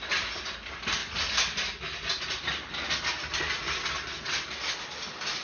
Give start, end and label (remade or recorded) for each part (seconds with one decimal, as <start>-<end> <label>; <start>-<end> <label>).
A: 0.0-5.4 recorded